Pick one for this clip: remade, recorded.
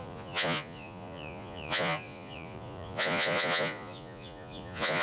remade